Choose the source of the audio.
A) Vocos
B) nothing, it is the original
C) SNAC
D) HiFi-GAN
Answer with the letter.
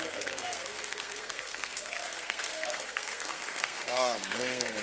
C